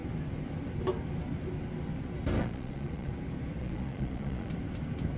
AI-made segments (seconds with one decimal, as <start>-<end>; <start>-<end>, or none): 2.4-3.1; 3.6-4.5